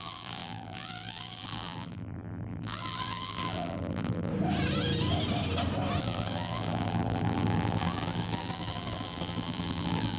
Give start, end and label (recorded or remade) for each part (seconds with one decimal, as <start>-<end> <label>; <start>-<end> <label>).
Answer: 0.0-4.3 remade; 4.3-6.0 recorded; 6.0-10.2 remade